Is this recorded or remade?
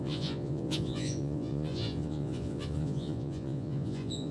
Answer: remade